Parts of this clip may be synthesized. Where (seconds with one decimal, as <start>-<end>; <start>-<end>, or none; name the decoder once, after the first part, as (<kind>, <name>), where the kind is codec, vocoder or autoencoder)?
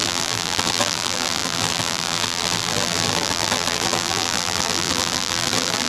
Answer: 0.0-5.9 (vocoder, BigVGAN v2)